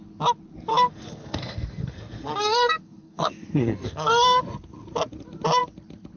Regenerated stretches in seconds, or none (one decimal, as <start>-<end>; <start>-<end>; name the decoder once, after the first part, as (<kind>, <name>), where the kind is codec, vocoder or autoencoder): 0.7-4.4 (codec, SNAC)